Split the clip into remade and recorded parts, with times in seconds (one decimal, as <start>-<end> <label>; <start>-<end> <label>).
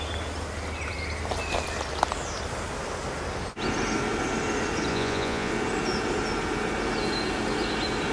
0.0-4.9 recorded; 4.9-5.5 remade; 5.5-8.1 recorded